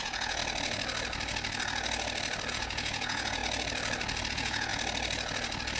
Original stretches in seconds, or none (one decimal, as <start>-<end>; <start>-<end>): 0.4-2.5; 3.4-4.3; 4.7-5.8